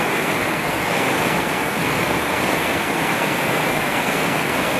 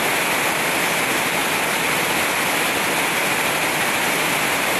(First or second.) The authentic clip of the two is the second